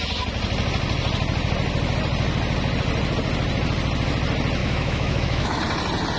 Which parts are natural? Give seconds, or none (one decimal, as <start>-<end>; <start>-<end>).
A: 0.0-4.6; 5.6-6.2